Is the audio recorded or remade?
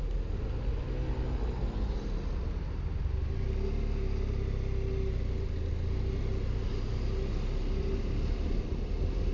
recorded